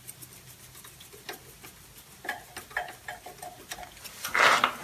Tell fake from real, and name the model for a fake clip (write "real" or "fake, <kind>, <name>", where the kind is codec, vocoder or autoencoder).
real